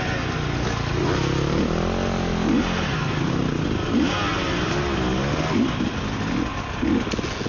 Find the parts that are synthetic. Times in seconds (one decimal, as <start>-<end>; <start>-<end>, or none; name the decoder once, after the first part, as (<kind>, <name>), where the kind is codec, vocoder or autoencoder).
none